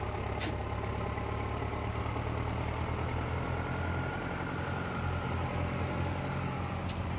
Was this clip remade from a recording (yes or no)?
no